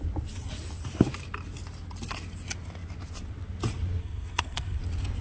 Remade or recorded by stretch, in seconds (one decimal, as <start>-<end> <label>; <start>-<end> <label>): 0.0-4.0 recorded; 4.0-4.8 remade; 4.8-5.2 recorded